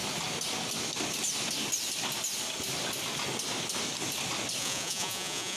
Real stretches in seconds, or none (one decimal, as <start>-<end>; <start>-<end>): 0.0-4.6